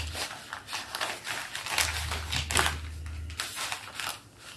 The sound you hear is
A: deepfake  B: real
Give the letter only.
B